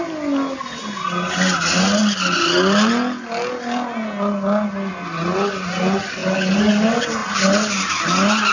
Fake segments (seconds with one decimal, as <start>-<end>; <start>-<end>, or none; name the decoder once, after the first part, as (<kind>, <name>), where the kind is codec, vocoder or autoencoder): none